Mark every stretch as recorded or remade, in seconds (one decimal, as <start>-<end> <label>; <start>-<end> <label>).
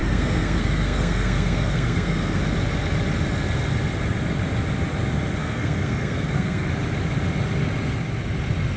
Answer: 0.0-2.4 remade; 2.4-5.4 recorded; 5.4-6.7 remade; 6.7-8.8 recorded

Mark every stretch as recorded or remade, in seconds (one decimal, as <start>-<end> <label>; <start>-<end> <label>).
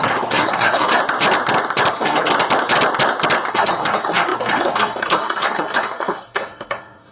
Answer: 0.0-1.0 remade; 1.0-1.9 recorded; 1.9-2.3 remade; 2.3-3.5 recorded; 3.5-7.1 remade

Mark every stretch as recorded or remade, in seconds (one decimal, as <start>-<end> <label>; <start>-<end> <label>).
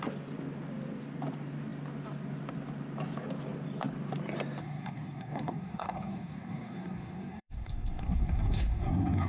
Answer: 0.0-4.6 recorded; 4.6-9.3 remade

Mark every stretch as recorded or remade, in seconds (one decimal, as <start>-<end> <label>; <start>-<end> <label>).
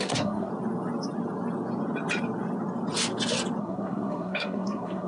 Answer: 0.0-0.5 remade; 0.5-3.6 recorded; 3.6-5.1 remade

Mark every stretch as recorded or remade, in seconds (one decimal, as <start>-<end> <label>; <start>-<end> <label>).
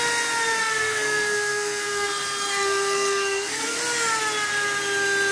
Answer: 0.0-0.6 recorded; 0.6-3.8 remade; 3.8-5.3 recorded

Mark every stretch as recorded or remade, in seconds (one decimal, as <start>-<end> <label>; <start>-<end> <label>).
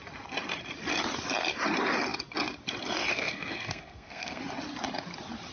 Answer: 0.0-3.1 recorded; 3.1-4.4 remade; 4.4-5.5 recorded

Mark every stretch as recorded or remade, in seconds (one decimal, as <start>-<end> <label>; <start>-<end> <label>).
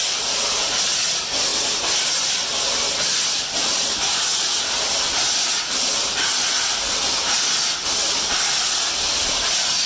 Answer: 0.0-9.9 recorded